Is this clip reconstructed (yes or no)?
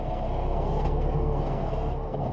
yes